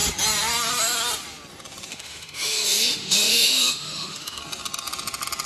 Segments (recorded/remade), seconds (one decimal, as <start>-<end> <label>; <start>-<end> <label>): 0.0-1.9 recorded; 1.9-4.4 remade; 4.4-5.5 recorded